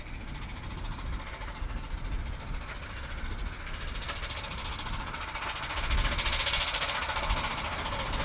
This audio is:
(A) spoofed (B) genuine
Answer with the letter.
B